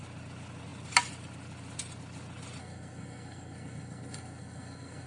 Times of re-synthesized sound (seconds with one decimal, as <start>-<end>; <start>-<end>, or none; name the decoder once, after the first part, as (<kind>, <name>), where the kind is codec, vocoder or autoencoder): 2.6-5.1 (codec, SNAC)